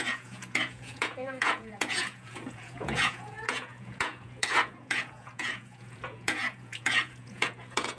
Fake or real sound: fake